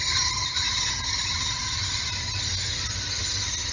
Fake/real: real